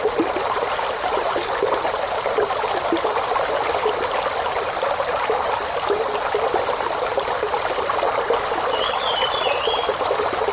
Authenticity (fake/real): real